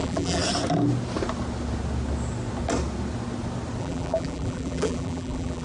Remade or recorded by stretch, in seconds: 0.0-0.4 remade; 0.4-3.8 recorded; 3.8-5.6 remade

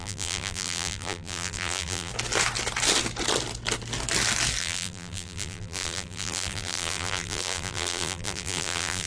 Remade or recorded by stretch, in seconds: 0.0-2.1 remade; 2.1-4.6 recorded; 4.6-9.1 remade

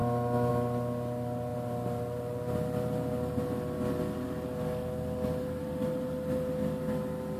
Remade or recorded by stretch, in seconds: 0.0-7.4 recorded

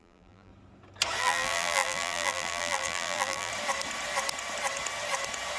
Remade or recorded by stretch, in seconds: 0.0-0.5 remade; 0.5-1.2 recorded; 1.2-3.5 remade; 3.5-5.6 recorded